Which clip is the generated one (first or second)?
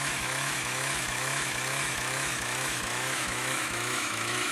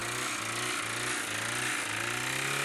first